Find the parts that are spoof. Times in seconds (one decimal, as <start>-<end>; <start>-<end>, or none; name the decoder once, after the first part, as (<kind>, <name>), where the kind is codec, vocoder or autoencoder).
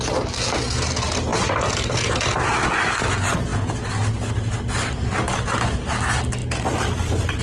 none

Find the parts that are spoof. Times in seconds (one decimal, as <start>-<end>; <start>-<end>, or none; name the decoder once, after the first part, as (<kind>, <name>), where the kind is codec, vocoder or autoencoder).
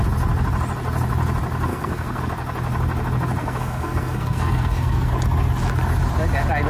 1.7-2.2 (codec, SNAC); 3.4-5.1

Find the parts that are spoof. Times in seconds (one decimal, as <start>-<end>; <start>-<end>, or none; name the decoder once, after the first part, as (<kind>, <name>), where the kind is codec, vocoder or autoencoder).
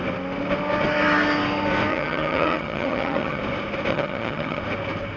1.9-3.4 (vocoder, HiFi-GAN); 3.9-4.6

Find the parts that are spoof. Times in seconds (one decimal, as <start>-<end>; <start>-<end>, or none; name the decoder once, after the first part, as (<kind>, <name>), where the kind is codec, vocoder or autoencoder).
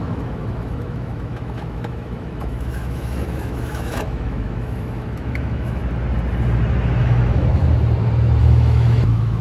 0.0-5.8 (autoencoder, DAC-VAE); 7.0-7.6; 8.4-9.4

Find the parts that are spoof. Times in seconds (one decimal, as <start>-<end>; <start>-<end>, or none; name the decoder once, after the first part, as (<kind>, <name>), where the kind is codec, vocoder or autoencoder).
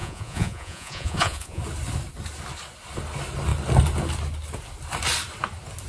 0.0-1.6 (vocoder, Vocos)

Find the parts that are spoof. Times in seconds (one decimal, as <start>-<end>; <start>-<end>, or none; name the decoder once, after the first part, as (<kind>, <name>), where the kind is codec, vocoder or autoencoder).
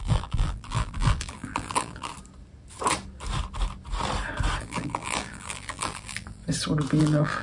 0.0-2.1 (vocoder, BigVGAN v2); 4.6-6.4; 7.0-7.4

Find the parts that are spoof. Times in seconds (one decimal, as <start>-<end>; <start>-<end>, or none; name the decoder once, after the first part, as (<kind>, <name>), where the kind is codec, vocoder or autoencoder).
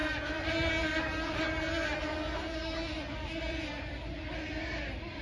3.1-5.2 (vocoder, BigVGAN v2)